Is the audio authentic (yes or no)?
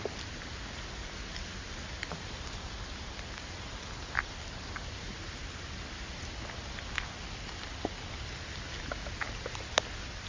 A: yes